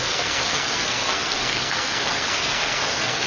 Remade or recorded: remade